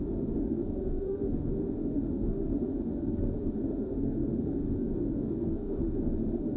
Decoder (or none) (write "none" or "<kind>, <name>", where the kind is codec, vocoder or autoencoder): autoencoder, DAC-VAE